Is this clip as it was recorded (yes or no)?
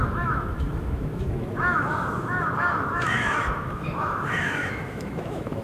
no